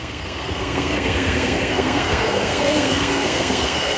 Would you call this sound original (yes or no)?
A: no